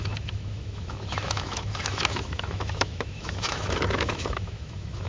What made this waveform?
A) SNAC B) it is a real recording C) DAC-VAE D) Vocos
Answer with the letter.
C